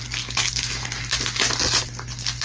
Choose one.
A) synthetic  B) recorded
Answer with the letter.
B